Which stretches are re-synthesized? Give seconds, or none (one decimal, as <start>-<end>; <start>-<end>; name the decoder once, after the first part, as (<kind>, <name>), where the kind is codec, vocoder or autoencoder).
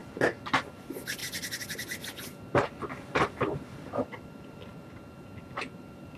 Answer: 0.6-1.2 (vocoder, BigVGAN v2); 4.0-4.7; 5.8-6.2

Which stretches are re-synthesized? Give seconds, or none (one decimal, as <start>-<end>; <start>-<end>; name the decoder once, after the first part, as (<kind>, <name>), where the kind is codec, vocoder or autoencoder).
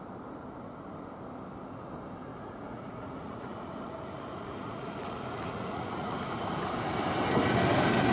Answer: 2.3-6.4 (vocoder, Vocos)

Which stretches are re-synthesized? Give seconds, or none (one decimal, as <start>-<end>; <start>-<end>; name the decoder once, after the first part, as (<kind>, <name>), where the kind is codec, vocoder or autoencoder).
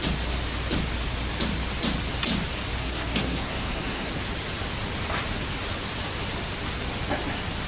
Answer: 2.8-4.1 (codec, SNAC)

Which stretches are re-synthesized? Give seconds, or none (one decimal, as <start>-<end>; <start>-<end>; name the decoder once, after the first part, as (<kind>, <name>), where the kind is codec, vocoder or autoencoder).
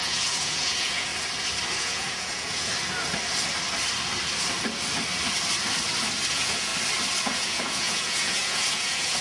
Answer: 0.0-1.1 (vocoder, Vocos); 1.8-2.7; 6.3-6.7; 7.2-9.2